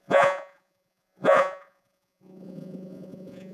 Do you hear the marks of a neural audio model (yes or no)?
yes